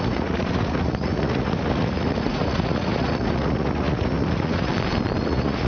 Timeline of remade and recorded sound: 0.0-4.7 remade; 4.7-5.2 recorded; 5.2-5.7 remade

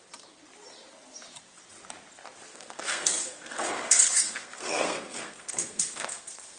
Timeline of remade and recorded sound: 0.0-2.5 recorded; 2.5-6.6 remade